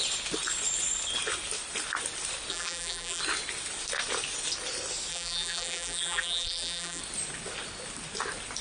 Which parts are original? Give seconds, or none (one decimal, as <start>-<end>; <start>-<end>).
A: 0.0-2.5; 3.2-5.1; 7.0-8.6